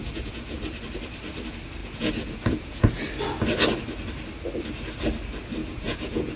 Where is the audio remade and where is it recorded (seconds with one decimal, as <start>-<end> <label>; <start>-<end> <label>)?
0.0-0.6 remade; 0.6-1.8 recorded; 1.8-3.0 remade; 3.0-5.6 recorded; 5.6-6.4 remade